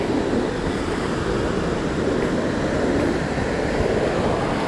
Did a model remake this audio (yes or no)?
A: no